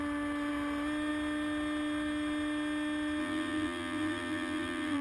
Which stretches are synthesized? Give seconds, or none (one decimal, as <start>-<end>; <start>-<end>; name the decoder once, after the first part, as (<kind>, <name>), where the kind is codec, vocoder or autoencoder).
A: 3.2-5.0 (vocoder, BigVGAN v2)